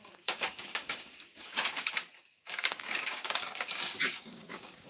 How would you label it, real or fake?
fake